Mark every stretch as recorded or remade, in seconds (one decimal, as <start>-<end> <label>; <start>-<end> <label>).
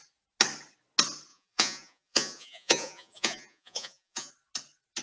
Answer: 0.0-1.3 recorded; 1.3-4.3 remade; 4.3-5.0 recorded